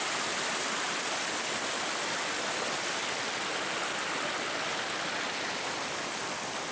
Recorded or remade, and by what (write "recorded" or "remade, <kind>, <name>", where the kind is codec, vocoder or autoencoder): recorded